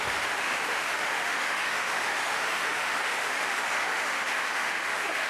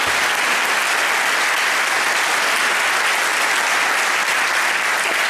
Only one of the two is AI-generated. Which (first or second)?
first